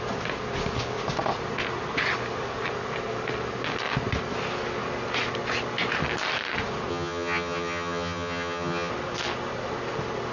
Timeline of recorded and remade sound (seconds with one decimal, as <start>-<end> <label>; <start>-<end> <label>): 0.0-6.9 recorded; 6.9-8.9 remade; 8.9-10.3 recorded